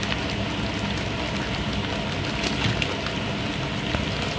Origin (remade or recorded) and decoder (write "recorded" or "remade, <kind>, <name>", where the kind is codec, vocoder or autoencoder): recorded